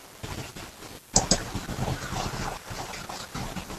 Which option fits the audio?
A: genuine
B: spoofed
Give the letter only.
A